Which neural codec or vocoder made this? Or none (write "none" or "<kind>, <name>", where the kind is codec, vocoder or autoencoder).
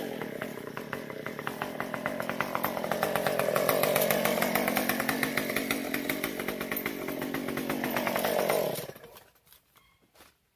none